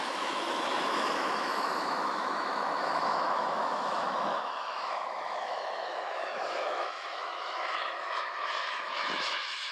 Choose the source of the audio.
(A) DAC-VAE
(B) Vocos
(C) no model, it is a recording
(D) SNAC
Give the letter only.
A